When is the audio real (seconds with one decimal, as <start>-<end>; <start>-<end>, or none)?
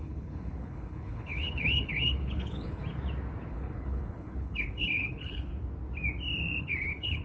2.8-3.5; 5.5-6.6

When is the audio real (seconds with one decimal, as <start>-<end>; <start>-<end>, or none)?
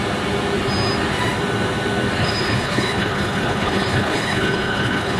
0.0-2.2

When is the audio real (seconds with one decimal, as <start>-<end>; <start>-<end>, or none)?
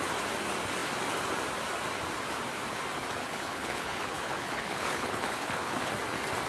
0.0-3.2; 5.9-6.5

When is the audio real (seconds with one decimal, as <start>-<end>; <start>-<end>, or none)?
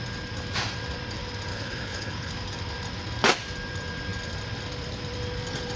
0.0-1.5; 2.3-5.8